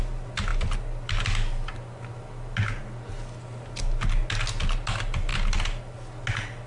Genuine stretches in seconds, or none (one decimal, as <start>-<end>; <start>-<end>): 0.0-6.7